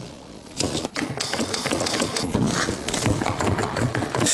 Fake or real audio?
fake